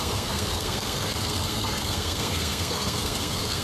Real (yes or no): no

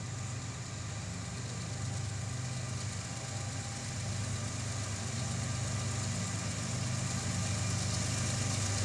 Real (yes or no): yes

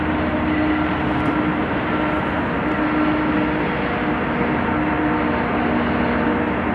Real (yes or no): yes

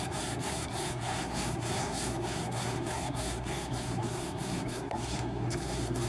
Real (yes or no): no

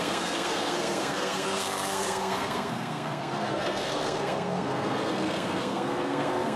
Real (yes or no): no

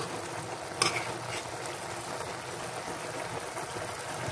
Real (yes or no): yes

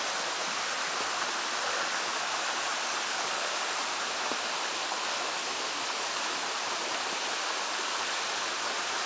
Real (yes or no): yes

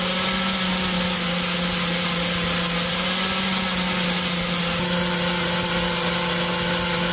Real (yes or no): yes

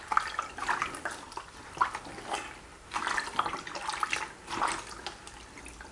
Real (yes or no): yes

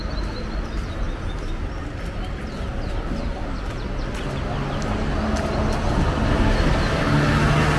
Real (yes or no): yes